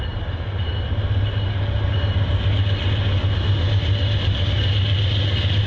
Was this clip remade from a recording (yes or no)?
no